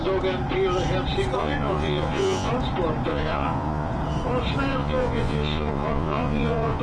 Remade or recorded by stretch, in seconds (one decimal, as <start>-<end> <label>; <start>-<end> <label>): 0.0-1.4 recorded; 1.4-2.5 remade; 2.5-3.1 recorded; 3.1-3.9 remade; 3.9-4.7 recorded; 4.7-6.8 remade